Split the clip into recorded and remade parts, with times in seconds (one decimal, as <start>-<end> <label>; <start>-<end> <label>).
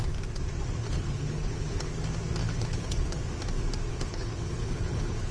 0.0-0.8 recorded; 0.8-1.9 remade; 1.9-2.4 recorded; 2.4-3.2 remade; 3.2-3.9 recorded; 3.9-5.3 remade